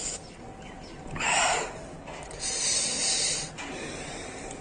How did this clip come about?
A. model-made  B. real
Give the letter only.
B